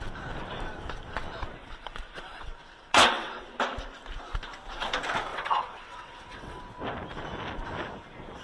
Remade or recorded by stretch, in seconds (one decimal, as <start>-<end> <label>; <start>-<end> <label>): 0.0-1.6 recorded; 1.6-3.6 remade; 3.6-5.3 recorded; 5.3-6.6 remade; 6.6-8.4 recorded

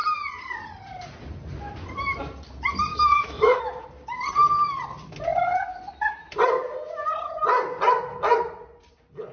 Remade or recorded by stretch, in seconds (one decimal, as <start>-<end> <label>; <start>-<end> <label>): 0.0-2.9 recorded; 2.9-3.6 remade; 3.6-9.3 recorded

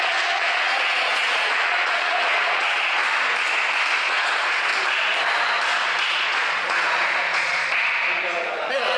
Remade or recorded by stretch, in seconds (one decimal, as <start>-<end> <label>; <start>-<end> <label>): 0.0-3.0 remade; 3.0-4.0 recorded; 4.0-4.7 remade; 4.7-6.1 recorded; 6.1-7.6 remade; 7.6-8.5 recorded; 8.5-9.0 remade